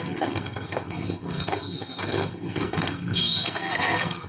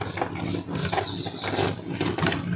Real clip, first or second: second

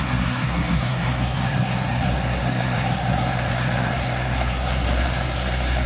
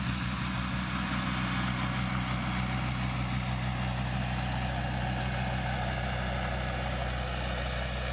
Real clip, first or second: second